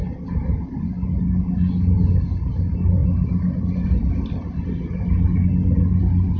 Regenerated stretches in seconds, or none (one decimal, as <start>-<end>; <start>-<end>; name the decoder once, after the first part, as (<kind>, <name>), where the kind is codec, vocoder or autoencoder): none